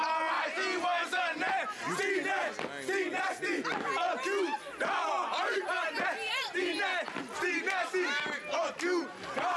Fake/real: real